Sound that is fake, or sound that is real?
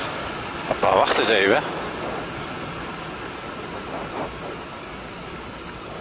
real